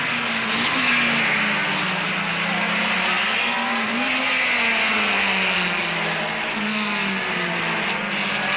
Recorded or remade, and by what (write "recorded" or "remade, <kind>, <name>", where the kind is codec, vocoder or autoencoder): recorded